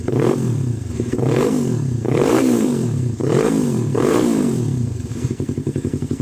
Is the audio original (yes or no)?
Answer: no